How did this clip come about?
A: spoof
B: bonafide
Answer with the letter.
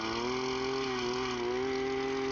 B